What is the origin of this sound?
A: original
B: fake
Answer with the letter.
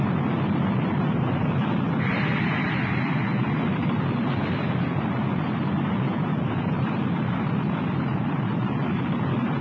B